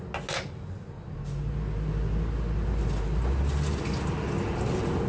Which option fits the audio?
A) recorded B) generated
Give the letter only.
A